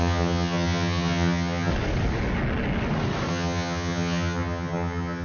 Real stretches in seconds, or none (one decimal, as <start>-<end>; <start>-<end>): 1.7-3.3